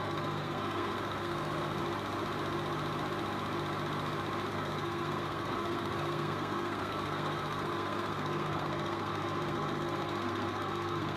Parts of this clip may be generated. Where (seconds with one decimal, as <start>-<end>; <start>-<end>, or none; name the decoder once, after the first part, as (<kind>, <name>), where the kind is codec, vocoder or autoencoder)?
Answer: 0.0-1.8 (codec, SNAC); 4.5-11.2